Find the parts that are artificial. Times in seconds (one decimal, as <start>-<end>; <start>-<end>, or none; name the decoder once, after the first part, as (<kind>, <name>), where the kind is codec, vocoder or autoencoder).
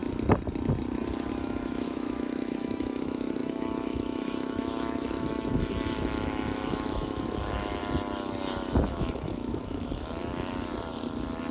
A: 1.3-7.8 (autoencoder, DAC-VAE); 8.9-10.2